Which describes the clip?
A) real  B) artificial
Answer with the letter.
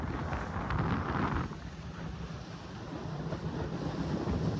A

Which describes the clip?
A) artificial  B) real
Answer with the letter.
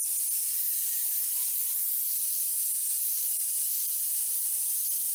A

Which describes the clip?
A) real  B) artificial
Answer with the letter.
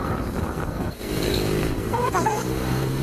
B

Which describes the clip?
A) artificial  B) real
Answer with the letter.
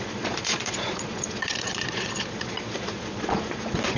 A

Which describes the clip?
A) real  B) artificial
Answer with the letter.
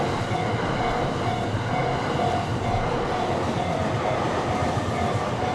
A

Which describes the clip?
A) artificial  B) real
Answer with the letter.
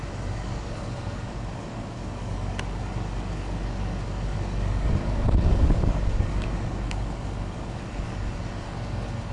A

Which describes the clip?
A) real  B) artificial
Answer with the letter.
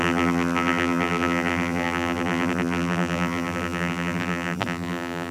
B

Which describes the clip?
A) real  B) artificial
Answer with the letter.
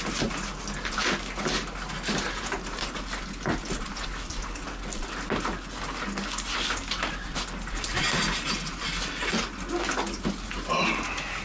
A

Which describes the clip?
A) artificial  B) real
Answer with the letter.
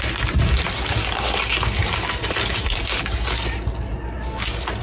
B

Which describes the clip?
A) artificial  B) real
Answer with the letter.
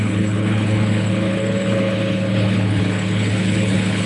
A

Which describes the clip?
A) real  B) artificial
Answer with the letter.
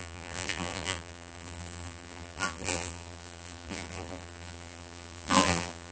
B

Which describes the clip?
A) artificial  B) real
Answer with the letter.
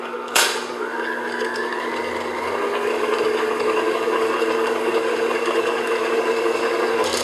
A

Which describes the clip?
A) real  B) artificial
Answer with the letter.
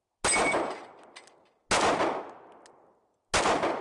A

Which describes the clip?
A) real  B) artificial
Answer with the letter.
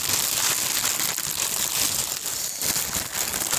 A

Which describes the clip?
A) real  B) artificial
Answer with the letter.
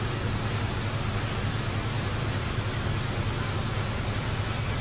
A